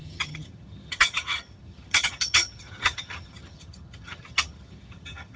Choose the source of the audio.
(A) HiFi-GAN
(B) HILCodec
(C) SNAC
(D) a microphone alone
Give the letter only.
A